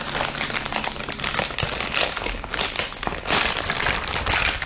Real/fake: real